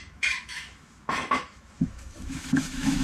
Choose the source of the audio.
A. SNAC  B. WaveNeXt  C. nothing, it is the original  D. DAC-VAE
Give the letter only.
D